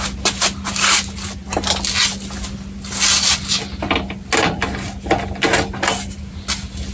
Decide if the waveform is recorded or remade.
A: recorded